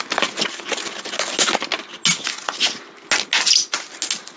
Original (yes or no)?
yes